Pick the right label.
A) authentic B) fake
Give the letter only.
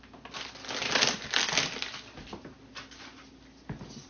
A